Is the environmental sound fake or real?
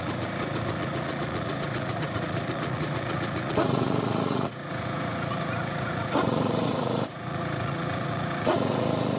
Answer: fake